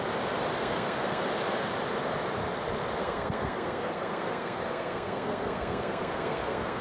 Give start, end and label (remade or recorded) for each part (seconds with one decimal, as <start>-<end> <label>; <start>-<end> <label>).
0.0-0.6 recorded; 0.6-1.2 remade; 1.2-3.0 recorded; 3.0-6.8 remade